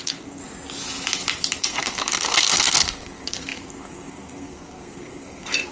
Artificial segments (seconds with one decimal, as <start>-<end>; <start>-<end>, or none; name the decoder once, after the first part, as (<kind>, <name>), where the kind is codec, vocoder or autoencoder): 0.0-0.4 (codec, SNAC); 1.6-5.7